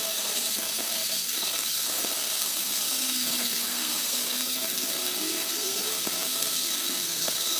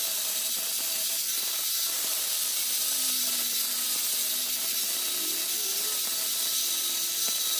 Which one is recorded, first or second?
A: second